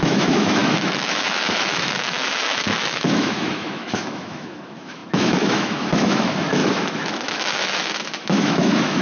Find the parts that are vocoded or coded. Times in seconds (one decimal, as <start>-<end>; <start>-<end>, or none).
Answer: 0.0-9.0